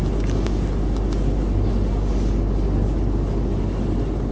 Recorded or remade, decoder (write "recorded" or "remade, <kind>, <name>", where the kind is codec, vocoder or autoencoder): recorded